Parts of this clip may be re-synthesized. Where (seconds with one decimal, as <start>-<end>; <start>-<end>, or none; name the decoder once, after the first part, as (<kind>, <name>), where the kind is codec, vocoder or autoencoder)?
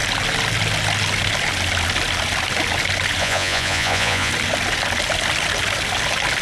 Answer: 3.2-4.3 (vocoder, Vocos)